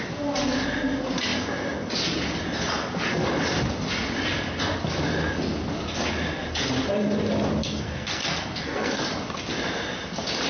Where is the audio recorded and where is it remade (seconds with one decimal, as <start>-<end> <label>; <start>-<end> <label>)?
0.0-7.6 recorded; 7.6-9.0 remade; 9.0-10.5 recorded